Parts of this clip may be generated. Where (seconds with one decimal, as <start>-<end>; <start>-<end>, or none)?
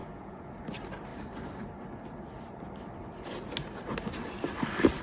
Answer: 0.0-0.5